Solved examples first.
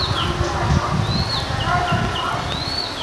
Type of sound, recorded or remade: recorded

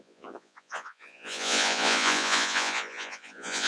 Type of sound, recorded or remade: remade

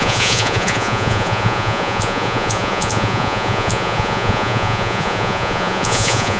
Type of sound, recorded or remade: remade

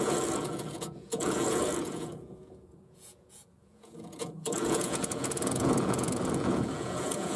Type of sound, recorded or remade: remade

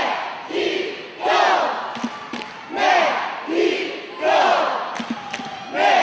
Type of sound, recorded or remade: recorded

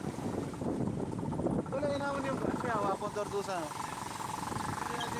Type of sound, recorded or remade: recorded